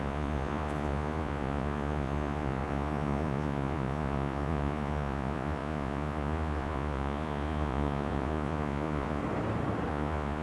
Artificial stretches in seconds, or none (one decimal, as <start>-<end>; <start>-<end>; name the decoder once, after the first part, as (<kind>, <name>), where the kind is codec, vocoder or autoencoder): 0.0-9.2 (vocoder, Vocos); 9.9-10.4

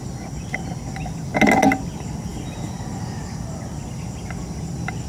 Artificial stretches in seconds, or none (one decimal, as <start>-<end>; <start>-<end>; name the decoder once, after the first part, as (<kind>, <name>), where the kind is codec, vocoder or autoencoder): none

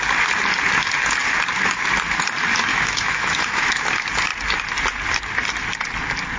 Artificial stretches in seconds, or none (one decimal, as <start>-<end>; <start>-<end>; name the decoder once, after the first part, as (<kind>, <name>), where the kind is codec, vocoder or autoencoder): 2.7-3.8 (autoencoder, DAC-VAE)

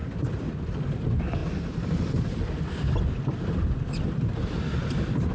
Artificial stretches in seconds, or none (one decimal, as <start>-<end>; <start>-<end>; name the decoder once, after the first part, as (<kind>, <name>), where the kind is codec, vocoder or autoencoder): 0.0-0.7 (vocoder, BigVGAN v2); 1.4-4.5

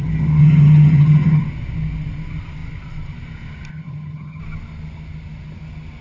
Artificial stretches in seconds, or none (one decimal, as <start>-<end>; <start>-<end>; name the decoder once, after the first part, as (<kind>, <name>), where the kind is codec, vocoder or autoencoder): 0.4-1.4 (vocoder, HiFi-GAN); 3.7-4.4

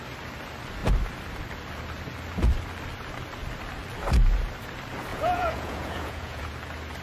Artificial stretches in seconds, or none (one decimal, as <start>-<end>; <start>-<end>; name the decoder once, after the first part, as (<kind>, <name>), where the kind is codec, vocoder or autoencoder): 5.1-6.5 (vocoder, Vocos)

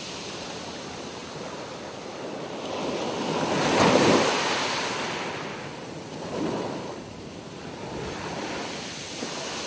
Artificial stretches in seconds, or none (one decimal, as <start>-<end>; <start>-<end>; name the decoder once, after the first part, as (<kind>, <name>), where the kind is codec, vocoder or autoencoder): none

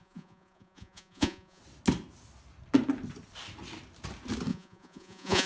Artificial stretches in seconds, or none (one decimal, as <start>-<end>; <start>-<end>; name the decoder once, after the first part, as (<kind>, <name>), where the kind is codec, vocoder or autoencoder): 0.0-1.6 (vocoder, Vocos); 4.5-5.5